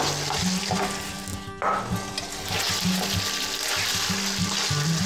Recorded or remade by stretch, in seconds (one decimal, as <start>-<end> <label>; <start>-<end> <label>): 0.0-5.1 recorded